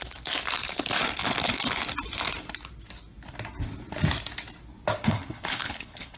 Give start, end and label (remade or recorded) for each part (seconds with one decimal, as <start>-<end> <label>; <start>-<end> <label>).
0.0-5.0 recorded; 5.0-6.2 remade